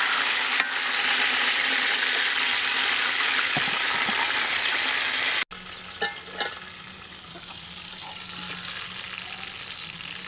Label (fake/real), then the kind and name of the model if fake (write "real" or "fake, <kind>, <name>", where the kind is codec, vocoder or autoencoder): real